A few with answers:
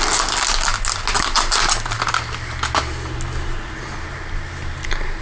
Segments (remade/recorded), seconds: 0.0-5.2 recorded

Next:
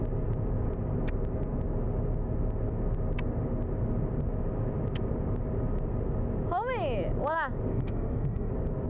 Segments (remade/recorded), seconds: 0.0-7.7 recorded; 7.7-8.5 remade; 8.5-8.9 recorded

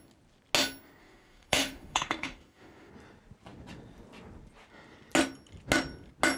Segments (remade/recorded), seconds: 0.0-1.0 recorded; 1.0-2.9 remade; 2.9-6.4 recorded

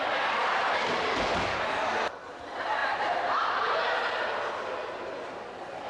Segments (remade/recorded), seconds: 0.0-5.9 recorded

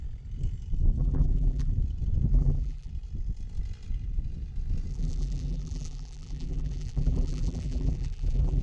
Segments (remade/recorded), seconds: 0.0-1.0 recorded; 1.0-1.7 remade; 1.7-2.3 recorded; 2.3-2.9 remade; 2.9-4.9 recorded; 4.9-8.6 remade

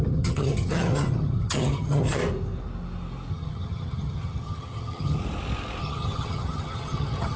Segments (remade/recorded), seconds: 0.0-2.2 remade; 2.2-3.3 recorded; 3.3-5.2 remade; 5.2-5.8 recorded; 5.8-7.4 remade

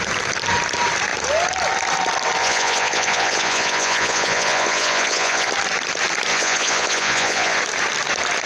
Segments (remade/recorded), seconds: 0.0-2.4 recorded; 2.4-5.5 remade; 5.5-6.3 recorded; 6.3-7.6 remade; 7.6-8.5 recorded

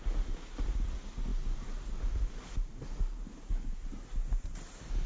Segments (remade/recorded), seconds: 0.0-1.3 remade; 1.3-4.4 recorded; 4.4-5.1 remade